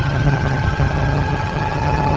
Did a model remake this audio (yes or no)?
yes